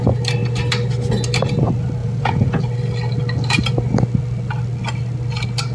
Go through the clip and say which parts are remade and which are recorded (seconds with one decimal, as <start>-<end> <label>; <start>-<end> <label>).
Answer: 0.0-2.0 recorded; 2.0-2.6 remade; 2.6-5.7 recorded